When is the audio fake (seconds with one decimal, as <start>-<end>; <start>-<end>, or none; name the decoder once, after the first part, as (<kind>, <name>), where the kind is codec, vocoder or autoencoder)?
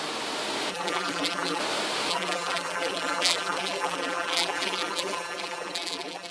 0.7-1.6 (vocoder, BigVGAN v2); 2.1-6.3